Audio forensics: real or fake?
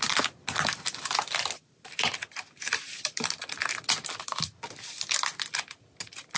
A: real